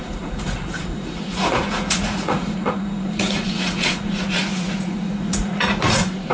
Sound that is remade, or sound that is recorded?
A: remade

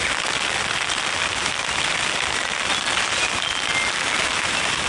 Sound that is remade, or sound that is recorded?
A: recorded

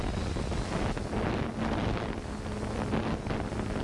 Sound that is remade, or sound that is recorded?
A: recorded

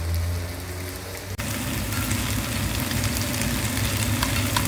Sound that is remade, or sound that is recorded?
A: recorded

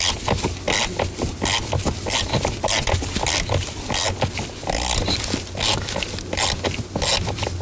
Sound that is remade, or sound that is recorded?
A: recorded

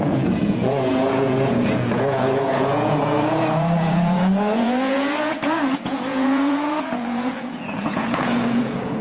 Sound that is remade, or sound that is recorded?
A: remade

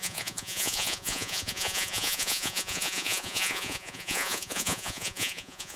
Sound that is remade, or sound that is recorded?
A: remade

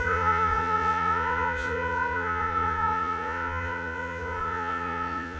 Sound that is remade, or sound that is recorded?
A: remade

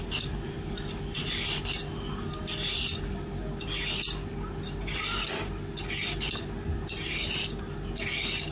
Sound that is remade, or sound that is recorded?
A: recorded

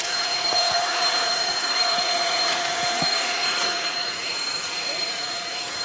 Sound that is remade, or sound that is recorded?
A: remade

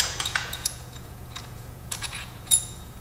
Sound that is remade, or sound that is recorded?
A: remade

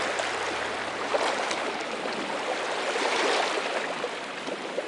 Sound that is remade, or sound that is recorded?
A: recorded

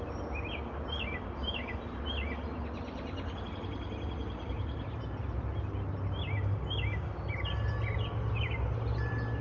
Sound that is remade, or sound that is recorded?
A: recorded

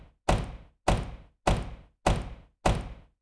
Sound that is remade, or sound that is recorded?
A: recorded